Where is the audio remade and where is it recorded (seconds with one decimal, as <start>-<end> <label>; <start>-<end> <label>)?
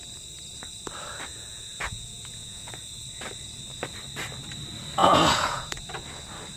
0.0-1.3 recorded; 1.3-2.7 remade; 2.7-5.0 recorded; 5.0-5.8 remade; 5.8-6.6 recorded